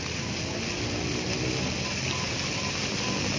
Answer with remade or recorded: recorded